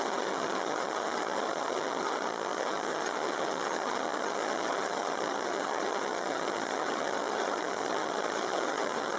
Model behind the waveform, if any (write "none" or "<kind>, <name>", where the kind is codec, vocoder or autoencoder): vocoder, HiFi-GAN